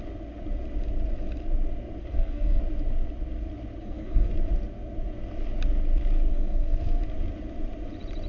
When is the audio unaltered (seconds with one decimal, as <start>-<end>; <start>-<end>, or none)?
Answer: 0.0-2.0; 2.6-3.8; 4.3-6.3; 7.0-8.3